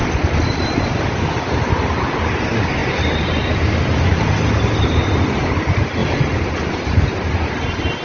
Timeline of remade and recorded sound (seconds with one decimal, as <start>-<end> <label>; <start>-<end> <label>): 0.0-1.5 remade; 1.5-6.0 recorded; 6.0-6.6 remade; 6.6-8.0 recorded